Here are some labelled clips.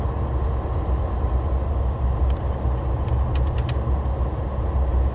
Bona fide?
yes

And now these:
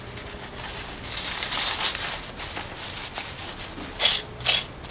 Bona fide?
yes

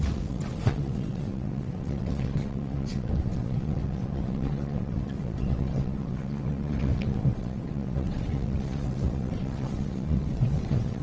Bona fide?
no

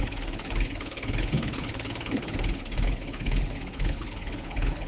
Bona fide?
no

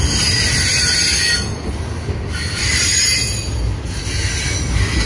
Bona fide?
yes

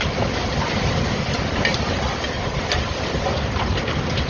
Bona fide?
yes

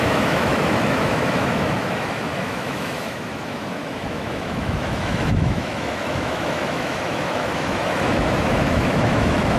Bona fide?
no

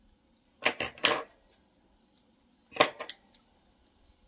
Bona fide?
yes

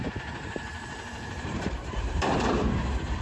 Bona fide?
no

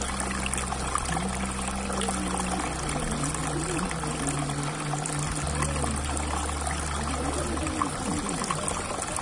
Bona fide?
yes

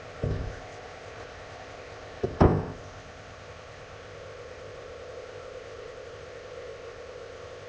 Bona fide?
no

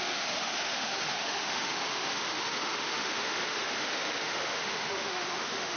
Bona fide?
no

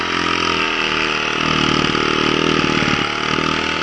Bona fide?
yes